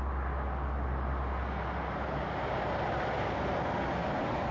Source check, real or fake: real